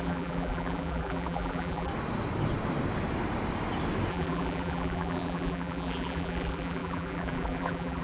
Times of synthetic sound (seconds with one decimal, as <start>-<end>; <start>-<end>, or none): 0.0-1.9; 4.1-8.0